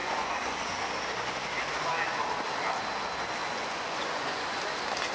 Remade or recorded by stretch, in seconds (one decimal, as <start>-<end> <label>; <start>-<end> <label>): 0.0-0.7 remade; 0.7-3.4 recorded; 3.4-4.6 remade; 4.6-5.1 recorded